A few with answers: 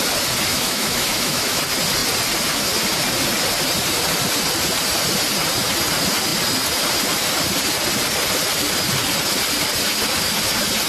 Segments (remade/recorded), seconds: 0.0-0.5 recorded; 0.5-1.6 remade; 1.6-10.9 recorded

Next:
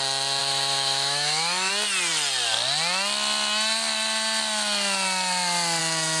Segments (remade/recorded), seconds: 0.0-0.4 recorded; 0.4-1.7 remade; 1.7-6.2 recorded